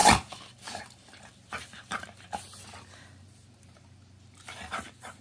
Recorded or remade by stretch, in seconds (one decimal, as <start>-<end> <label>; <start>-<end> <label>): 0.0-5.2 recorded